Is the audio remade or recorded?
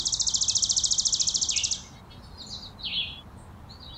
recorded